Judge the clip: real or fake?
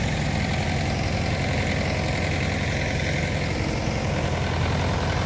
real